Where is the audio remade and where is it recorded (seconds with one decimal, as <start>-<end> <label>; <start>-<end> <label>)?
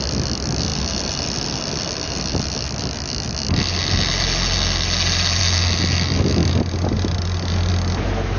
0.0-8.4 recorded